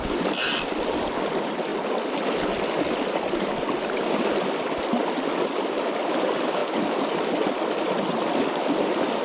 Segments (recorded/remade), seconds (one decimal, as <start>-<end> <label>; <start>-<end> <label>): 0.0-1.7 remade; 1.7-5.4 recorded; 5.4-6.6 remade; 6.6-7.8 recorded; 7.8-9.2 remade